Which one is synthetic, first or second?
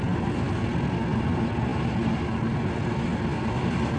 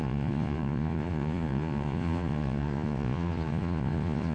second